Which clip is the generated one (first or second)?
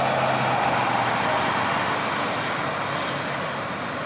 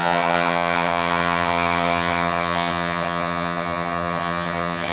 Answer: second